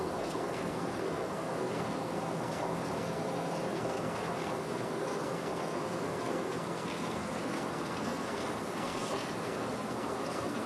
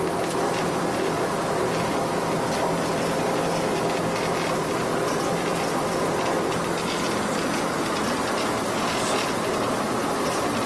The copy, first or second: first